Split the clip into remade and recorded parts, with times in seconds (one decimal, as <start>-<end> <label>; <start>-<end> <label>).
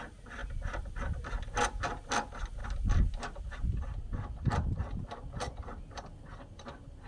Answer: 0.0-7.1 recorded